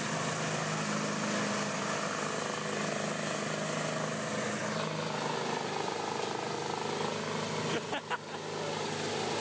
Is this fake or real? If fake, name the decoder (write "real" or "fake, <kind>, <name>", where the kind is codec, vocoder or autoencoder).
real